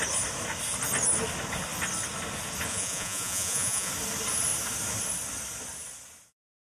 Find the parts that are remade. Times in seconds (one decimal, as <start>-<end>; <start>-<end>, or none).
2.7-3.9